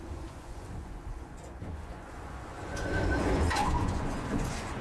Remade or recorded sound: remade